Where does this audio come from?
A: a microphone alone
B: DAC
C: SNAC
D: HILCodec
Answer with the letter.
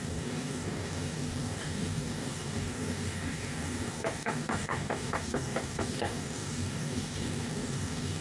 B